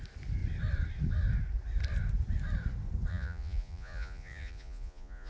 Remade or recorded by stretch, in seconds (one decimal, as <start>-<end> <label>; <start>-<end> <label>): 0.0-3.1 recorded; 3.1-5.3 remade